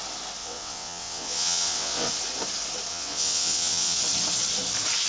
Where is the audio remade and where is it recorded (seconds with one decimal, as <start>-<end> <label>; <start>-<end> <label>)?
0.0-0.4 recorded; 0.4-2.1 remade; 2.1-2.9 recorded; 2.9-4.0 remade; 4.0-5.1 recorded